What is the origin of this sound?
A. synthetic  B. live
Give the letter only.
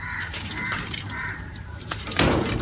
A